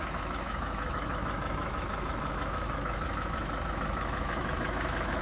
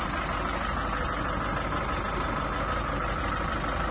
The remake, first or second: first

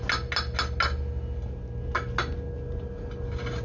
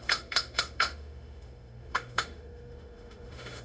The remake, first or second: second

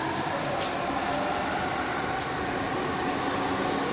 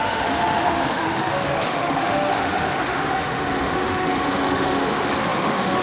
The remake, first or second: second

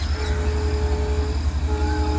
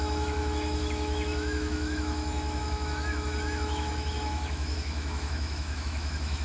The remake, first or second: second